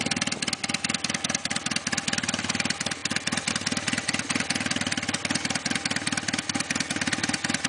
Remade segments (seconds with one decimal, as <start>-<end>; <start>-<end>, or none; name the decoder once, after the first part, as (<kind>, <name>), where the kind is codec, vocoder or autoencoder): none